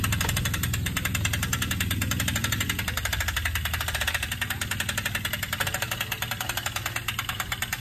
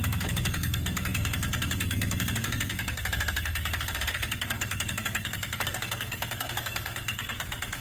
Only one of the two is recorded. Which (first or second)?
first